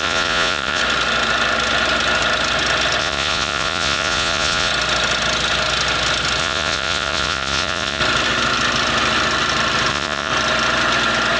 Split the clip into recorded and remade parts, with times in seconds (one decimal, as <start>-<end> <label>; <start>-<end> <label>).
0.0-0.8 remade; 0.8-3.0 recorded; 3.0-4.7 remade; 4.7-6.4 recorded; 6.4-8.0 remade; 8.0-9.9 recorded; 9.9-10.3 remade; 10.3-11.4 recorded